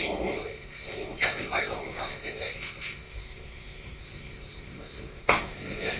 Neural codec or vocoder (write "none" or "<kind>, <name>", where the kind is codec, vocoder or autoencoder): codec, SNAC